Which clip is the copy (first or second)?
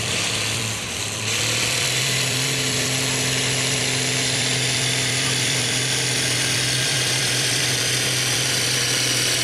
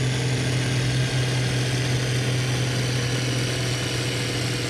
first